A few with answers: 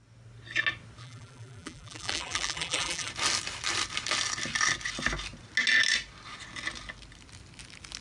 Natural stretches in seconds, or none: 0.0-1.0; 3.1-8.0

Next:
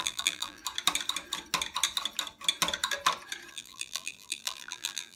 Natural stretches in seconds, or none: 0.6-3.5

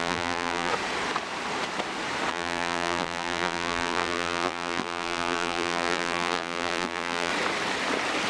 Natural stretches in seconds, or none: 0.7-2.3; 7.3-8.3

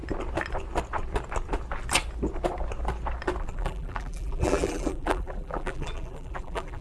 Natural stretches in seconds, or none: 0.0-3.4

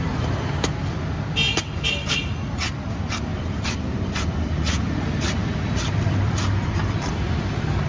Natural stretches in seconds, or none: 0.0-3.3; 4.1-5.4; 7.1-7.9

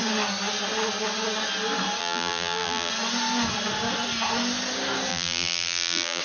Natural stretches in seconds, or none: 0.0-2.0; 2.9-5.1